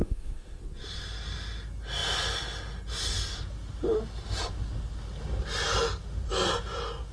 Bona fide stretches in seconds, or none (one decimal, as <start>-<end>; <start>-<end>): 0.6-7.1